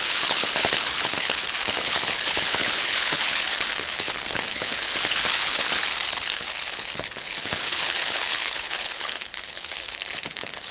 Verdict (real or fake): fake